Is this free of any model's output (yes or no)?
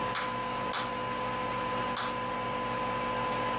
yes